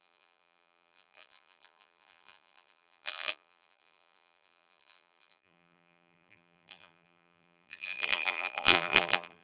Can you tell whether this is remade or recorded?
remade